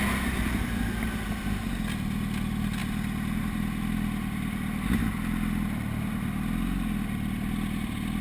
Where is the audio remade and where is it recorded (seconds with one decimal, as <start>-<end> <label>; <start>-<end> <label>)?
0.0-8.2 recorded